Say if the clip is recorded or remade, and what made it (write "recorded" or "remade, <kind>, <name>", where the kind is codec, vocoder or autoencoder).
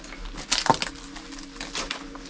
recorded